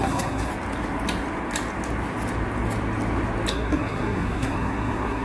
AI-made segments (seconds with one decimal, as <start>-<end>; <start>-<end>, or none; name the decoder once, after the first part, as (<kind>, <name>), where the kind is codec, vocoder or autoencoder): 0.0-0.5 (codec, SNAC); 3.5-5.2